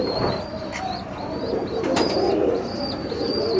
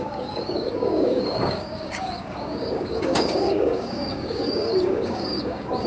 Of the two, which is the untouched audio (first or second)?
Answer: first